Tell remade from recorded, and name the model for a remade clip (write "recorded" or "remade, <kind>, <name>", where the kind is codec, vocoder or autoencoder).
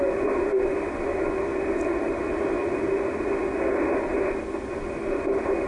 recorded